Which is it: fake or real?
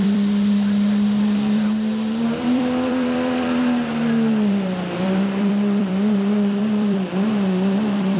fake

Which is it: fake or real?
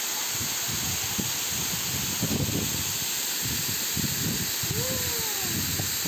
real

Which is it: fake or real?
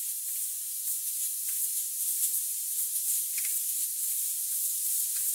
fake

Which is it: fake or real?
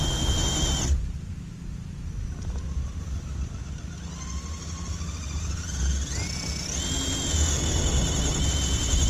real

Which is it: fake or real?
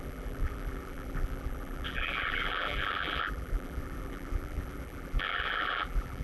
fake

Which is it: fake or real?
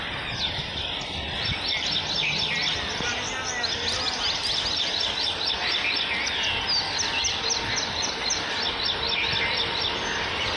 real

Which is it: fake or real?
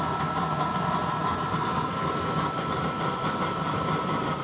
real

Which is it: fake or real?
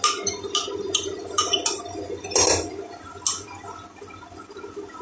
real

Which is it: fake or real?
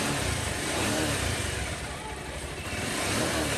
fake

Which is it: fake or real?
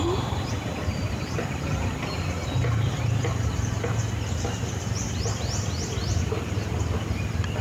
fake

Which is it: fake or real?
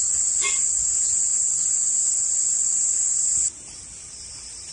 real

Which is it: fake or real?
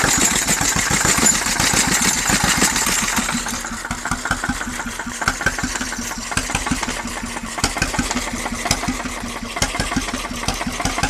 real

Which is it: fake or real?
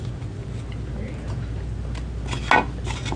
real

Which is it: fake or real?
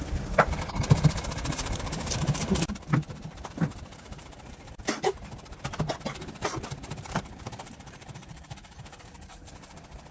fake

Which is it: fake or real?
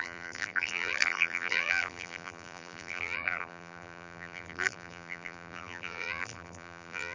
fake